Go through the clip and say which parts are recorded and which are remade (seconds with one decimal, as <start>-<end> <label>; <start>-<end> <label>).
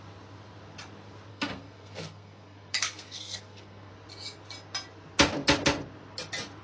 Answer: 0.0-1.3 recorded; 1.3-3.9 remade; 3.9-6.6 recorded